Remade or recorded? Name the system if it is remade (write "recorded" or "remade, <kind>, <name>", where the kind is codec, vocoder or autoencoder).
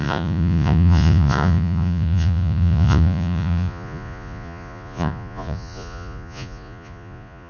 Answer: remade, vocoder, Vocos